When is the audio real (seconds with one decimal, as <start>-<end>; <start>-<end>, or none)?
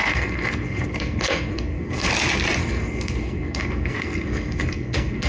2.1-2.6